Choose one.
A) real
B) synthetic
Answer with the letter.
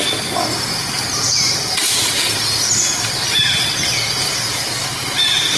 A